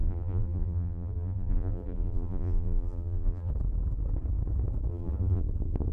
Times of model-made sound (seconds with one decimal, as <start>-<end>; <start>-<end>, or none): 0.0-3.5; 4.9-5.4